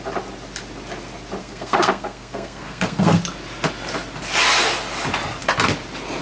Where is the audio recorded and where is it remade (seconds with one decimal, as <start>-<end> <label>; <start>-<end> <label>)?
0.0-1.4 recorded; 1.4-3.2 remade; 3.2-6.2 recorded